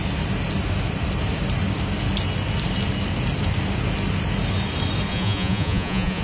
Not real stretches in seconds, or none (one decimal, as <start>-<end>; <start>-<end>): 5.1-6.2

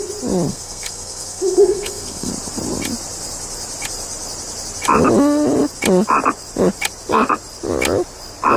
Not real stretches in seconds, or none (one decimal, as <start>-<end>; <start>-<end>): 0.5-2.3

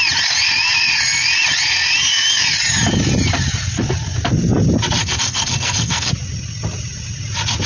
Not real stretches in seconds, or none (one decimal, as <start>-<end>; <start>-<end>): 5.0-6.1

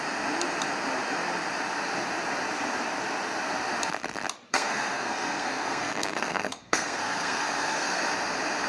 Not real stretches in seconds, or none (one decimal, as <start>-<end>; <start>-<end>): 4.5-8.0

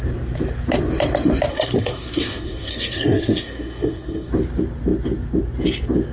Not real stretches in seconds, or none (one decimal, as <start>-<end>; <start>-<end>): 1.5-4.3

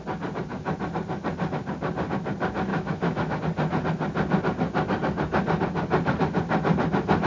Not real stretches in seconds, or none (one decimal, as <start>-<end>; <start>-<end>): 2.7-3.4

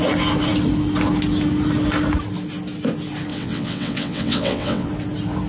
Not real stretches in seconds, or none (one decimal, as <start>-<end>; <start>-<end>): 3.3-4.9